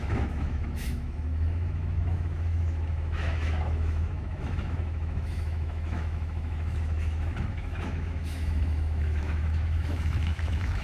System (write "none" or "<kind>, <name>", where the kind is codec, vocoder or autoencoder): autoencoder, DAC-VAE